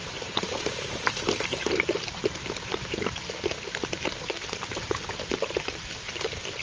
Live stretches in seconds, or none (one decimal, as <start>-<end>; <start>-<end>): 3.3-4.6; 6.1-6.6